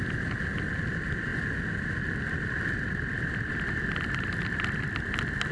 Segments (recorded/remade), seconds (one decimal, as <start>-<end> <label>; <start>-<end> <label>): 0.0-5.5 recorded